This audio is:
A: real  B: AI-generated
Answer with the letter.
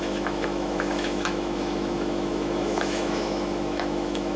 B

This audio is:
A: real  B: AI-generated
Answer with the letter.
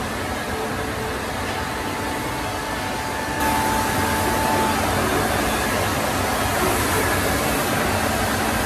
A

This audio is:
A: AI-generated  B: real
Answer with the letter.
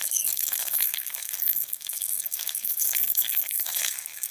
A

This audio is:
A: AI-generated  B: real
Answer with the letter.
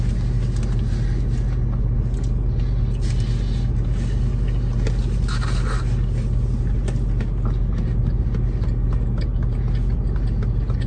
B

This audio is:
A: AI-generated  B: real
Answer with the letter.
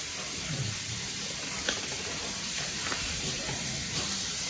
A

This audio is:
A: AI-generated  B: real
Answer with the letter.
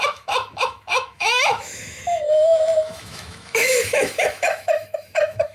A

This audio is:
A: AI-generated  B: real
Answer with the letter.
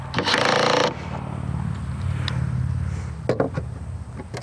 B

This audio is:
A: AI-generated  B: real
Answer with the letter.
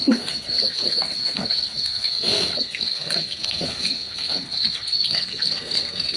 A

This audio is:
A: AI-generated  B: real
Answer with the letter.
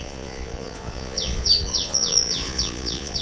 A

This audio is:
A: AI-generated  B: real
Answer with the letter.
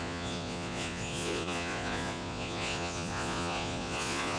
A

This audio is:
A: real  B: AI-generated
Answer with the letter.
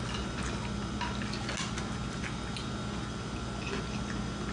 A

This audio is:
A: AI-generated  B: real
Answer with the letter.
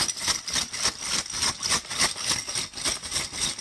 B